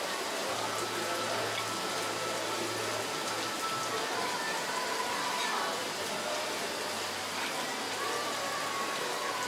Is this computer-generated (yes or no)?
no